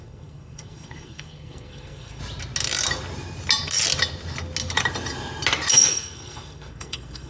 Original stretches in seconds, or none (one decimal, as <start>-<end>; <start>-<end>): 2.2-5.7